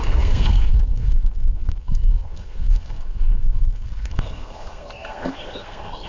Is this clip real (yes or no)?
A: no